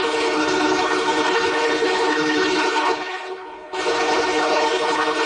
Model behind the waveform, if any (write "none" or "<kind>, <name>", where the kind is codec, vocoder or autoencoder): codec, HILCodec